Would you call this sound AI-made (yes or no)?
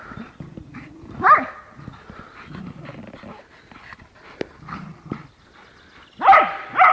no